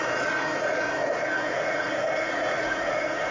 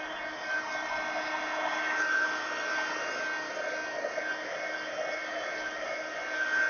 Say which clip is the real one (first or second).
second